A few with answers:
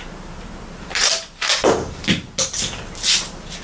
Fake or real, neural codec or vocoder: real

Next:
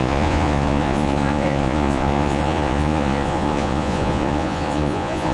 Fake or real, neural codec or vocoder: fake, vocoder, Vocos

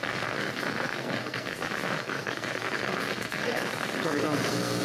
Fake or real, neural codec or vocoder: fake, codec, SNAC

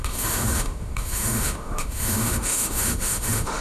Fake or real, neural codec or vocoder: fake, autoencoder, DAC-VAE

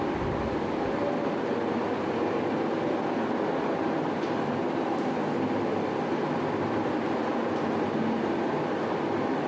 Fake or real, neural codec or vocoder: real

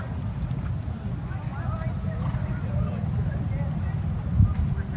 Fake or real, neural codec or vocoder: real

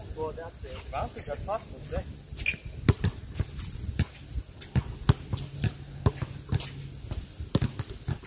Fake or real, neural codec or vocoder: real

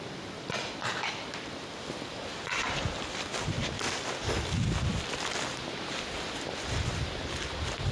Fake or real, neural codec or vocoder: real